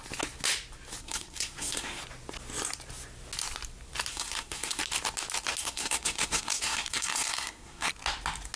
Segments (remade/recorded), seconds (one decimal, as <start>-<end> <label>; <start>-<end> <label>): 0.0-1.0 recorded; 1.0-2.0 remade; 2.0-4.1 recorded; 4.1-4.8 remade; 4.8-5.6 recorded; 5.6-7.9 remade; 7.9-8.6 recorded